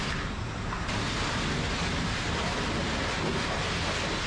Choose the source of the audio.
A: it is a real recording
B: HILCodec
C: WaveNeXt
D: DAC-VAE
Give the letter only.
A